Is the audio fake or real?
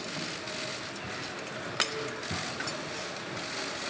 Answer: real